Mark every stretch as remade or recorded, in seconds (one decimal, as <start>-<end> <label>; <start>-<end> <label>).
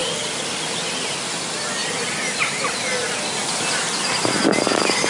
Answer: 0.0-5.1 recorded